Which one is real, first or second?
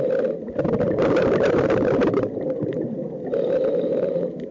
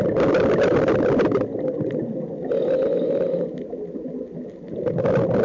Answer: second